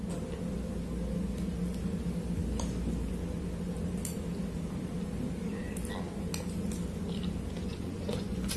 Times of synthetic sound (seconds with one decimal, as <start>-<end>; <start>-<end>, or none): 7.6-8.6